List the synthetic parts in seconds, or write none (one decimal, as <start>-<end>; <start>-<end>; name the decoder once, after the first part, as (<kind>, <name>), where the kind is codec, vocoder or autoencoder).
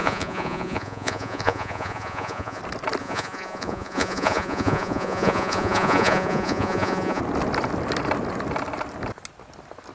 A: 0.0-2.6 (vocoder, Vocos); 3.0-7.2